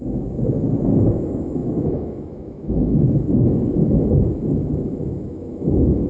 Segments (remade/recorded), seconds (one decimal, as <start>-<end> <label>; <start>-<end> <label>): 0.0-6.1 remade